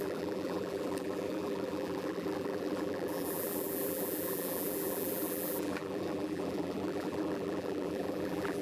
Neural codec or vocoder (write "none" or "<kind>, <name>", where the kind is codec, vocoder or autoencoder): vocoder, BigVGAN v2